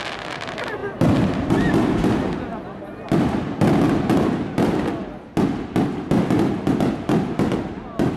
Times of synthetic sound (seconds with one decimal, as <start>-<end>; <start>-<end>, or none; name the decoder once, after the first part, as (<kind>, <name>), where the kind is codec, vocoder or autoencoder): none